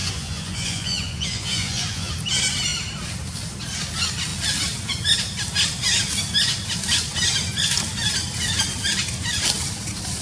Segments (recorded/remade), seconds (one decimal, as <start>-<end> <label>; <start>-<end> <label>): 0.0-2.1 remade; 2.1-10.2 recorded